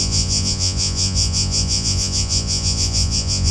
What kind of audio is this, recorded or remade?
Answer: remade